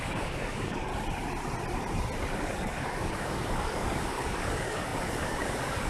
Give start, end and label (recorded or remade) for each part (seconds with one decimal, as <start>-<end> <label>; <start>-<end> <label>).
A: 0.0-0.9 remade; 0.9-2.4 recorded; 2.4-5.9 remade